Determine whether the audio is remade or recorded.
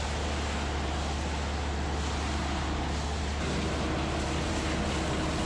recorded